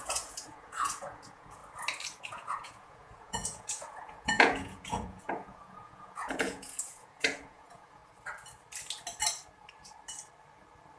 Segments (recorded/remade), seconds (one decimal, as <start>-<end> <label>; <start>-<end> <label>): 0.0-1.6 remade; 1.6-2.2 recorded; 2.2-8.0 remade; 8.0-11.0 recorded